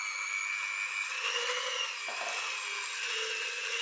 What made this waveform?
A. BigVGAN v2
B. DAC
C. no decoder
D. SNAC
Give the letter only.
C